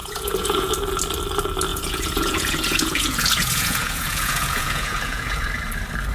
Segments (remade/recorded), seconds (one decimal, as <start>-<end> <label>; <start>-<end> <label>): 0.0-0.7 remade; 0.7-1.7 recorded; 1.7-5.4 remade; 5.4-6.1 recorded